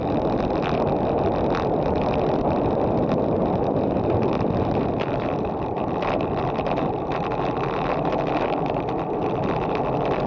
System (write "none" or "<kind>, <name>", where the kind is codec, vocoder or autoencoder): vocoder, BigVGAN v2